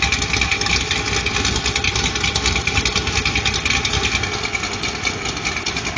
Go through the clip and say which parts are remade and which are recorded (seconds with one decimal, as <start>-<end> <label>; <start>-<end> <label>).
0.0-6.0 recorded